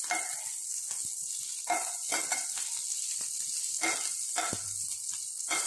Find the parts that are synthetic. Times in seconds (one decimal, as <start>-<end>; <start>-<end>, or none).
none